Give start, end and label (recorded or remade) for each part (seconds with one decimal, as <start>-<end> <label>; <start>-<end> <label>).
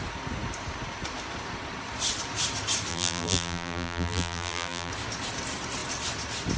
0.0-2.9 recorded; 2.9-4.9 remade; 4.9-6.6 recorded